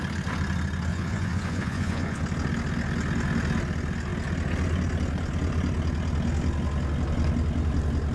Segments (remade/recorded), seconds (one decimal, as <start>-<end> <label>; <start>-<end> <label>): 0.0-0.9 recorded; 0.9-2.2 remade; 2.2-8.1 recorded